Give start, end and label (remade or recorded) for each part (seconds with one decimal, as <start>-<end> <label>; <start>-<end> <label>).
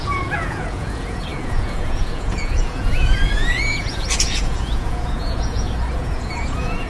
0.0-6.9 remade